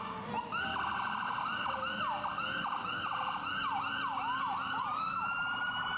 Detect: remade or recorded recorded